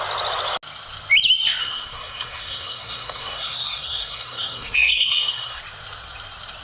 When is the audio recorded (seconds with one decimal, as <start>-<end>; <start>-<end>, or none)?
0.0-1.6; 5.6-6.6